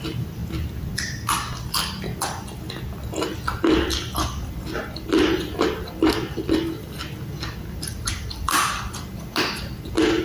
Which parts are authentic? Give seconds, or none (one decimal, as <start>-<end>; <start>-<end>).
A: 0.0-10.2